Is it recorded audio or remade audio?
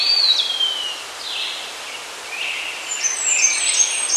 recorded